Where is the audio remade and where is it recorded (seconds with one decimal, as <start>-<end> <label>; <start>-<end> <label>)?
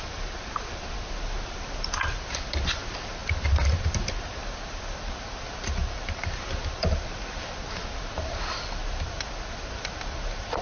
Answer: 0.0-10.6 recorded